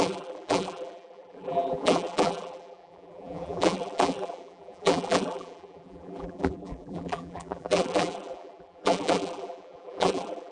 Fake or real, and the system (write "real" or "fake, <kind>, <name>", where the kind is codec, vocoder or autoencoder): fake, vocoder, BigVGAN v2